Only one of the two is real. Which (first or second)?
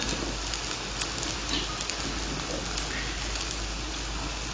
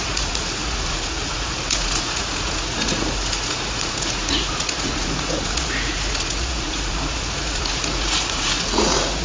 first